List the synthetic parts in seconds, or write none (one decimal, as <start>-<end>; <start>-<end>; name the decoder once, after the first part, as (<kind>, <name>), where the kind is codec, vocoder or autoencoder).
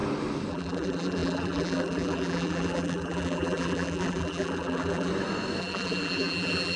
0.5-5.1 (vocoder, BigVGAN v2); 5.6-6.8